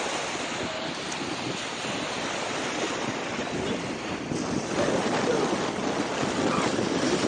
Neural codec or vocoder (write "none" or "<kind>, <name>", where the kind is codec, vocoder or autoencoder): none